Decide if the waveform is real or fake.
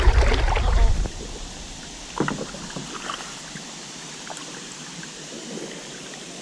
real